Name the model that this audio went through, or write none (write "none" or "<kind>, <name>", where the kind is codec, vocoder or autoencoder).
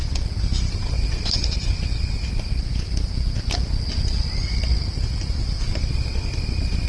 vocoder, BigVGAN v2